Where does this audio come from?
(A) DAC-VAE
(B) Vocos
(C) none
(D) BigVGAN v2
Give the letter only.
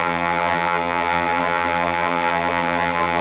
D